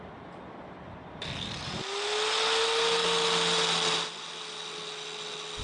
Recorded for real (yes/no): yes